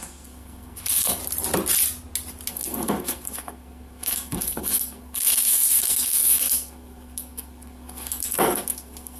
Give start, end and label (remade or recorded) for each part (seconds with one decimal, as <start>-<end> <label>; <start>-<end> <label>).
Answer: 0.0-1.2 remade; 1.2-2.5 recorded; 2.5-9.2 remade